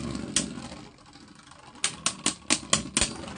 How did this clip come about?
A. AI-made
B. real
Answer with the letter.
B